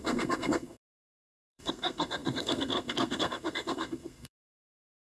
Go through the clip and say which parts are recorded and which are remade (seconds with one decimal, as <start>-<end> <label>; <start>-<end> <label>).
0.0-5.0 remade